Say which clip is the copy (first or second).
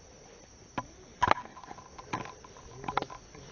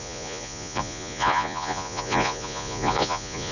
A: second